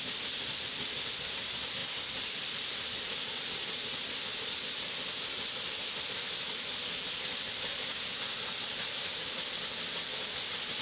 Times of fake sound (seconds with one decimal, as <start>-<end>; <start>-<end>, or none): none